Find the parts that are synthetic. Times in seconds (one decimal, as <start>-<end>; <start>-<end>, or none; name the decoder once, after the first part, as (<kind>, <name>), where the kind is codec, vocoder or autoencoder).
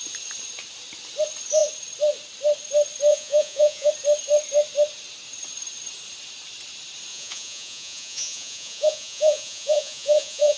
3.1-3.9 (vocoder, Vocos); 7.1-10.6